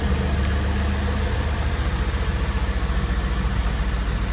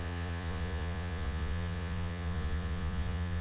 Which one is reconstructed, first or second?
second